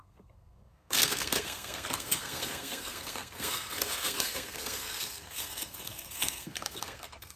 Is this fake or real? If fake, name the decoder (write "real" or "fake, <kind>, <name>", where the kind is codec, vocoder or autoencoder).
fake, codec, SNAC